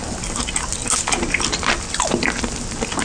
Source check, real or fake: real